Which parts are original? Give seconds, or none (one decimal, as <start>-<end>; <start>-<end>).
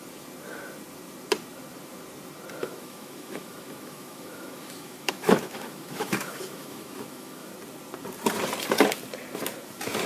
0.0-2.6; 7.5-10.1